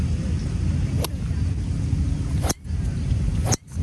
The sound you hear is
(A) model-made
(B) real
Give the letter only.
B